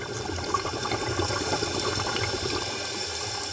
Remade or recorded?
remade